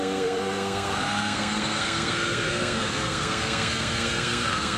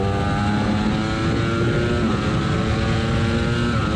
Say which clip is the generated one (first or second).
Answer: first